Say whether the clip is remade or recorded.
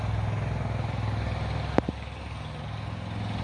recorded